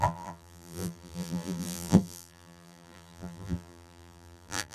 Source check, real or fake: fake